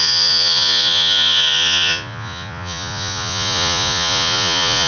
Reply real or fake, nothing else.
fake